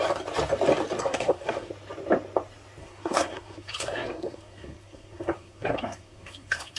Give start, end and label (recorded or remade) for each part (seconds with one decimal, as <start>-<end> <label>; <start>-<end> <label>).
0.0-1.0 recorded; 1.0-1.7 remade; 1.7-2.8 recorded; 2.8-6.8 remade